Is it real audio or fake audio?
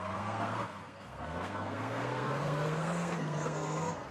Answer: fake